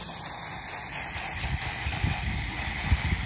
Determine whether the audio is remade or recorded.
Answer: recorded